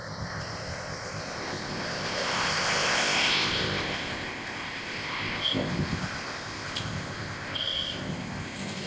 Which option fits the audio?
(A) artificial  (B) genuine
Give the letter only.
A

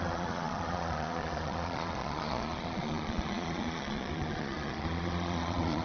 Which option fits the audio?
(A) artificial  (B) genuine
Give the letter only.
A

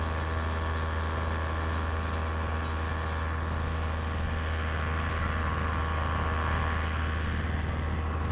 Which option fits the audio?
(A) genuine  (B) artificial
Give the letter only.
A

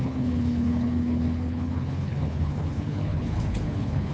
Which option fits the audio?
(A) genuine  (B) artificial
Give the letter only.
B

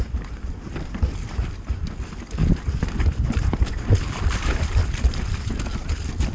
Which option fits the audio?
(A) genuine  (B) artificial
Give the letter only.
A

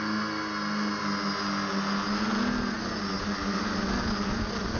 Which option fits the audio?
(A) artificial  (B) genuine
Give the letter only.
B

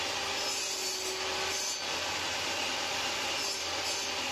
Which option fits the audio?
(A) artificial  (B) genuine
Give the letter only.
B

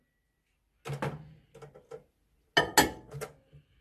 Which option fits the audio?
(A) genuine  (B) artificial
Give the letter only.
A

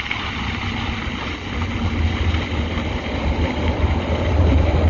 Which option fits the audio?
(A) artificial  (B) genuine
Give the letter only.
B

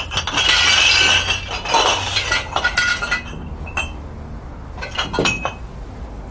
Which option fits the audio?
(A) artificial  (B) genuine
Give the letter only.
B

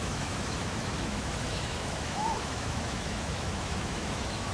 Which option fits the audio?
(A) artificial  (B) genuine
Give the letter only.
A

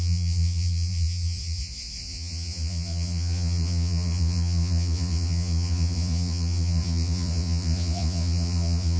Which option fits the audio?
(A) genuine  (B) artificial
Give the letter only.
B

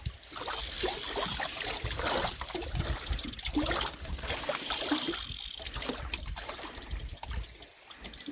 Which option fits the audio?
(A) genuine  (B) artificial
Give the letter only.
A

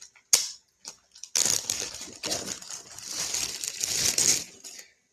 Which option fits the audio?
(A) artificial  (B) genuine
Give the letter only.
B